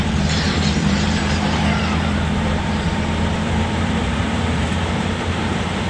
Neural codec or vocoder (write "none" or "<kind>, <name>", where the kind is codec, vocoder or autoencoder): vocoder, BigVGAN v2